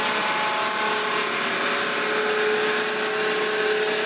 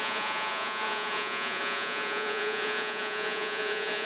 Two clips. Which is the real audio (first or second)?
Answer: first